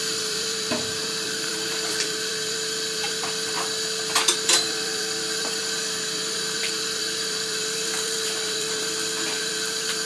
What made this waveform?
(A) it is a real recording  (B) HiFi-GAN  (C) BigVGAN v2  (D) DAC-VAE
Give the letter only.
C